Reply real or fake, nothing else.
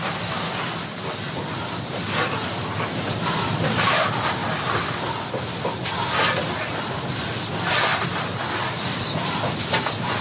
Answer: real